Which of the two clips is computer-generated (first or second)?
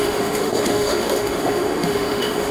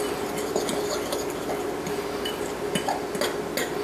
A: first